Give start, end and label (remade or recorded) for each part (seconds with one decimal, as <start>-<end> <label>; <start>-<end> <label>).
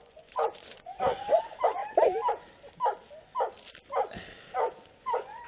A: 0.0-1.8 remade; 1.8-5.0 recorded; 5.0-5.5 remade